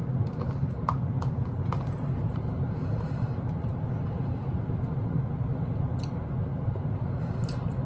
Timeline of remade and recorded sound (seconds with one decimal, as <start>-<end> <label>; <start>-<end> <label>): 0.0-1.6 recorded; 1.6-6.0 remade; 6.0-6.5 recorded; 6.5-7.2 remade; 7.2-7.8 recorded